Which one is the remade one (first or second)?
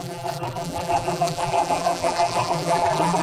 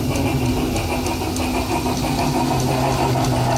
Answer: first